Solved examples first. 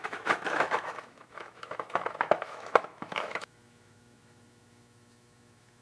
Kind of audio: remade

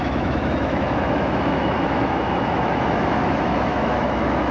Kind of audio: remade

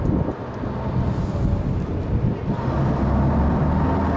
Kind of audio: recorded